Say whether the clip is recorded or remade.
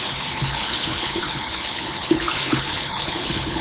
remade